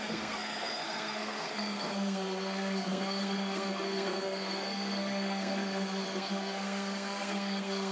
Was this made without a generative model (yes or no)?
no